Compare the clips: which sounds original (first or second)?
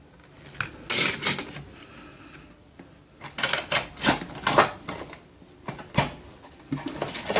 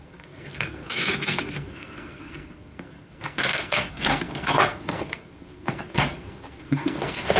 first